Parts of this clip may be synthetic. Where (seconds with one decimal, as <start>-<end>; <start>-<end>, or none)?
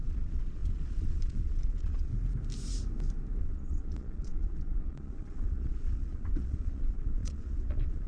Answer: 0.0-2.1; 3.4-8.1